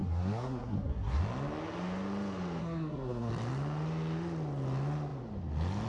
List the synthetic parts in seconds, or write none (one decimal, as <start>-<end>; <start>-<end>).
0.0-1.2; 2.6-3.3

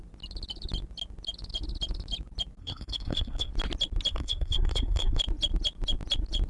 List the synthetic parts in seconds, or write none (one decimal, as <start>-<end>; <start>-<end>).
2.6-3.5; 4.1-5.2

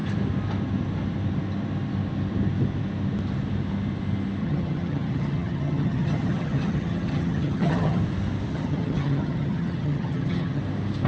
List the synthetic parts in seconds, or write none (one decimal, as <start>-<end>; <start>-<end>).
4.4-8.0; 8.5-10.6

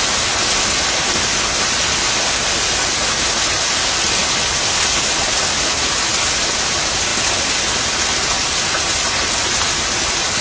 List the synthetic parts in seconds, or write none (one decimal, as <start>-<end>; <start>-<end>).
none

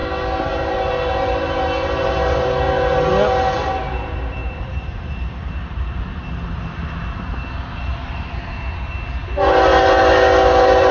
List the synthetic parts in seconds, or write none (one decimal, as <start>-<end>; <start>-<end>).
4.4-6.0

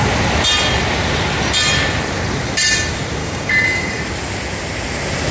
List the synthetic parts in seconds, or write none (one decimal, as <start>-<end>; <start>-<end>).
3.2-4.0